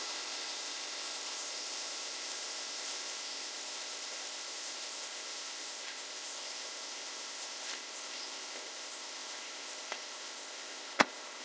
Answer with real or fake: fake